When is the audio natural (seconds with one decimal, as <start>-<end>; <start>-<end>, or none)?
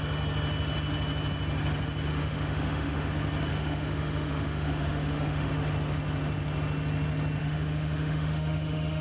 0.0-2.1; 3.1-3.5; 5.5-7.4